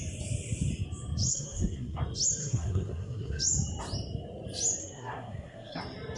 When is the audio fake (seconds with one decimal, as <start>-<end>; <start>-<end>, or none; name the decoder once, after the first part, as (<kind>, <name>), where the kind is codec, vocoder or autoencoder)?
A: 1.3-2.0 (codec, SNAC); 2.4-3.4; 4.8-5.8